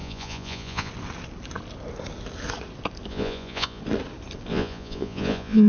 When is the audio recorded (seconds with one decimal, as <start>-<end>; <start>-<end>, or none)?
0.9-3.1; 3.8-4.5